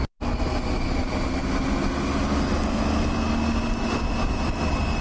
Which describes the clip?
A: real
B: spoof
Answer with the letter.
A